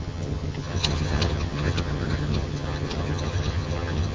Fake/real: fake